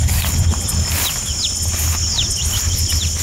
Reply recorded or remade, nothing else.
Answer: recorded